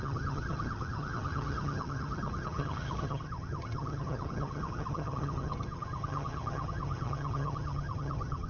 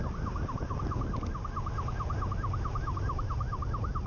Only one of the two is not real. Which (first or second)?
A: first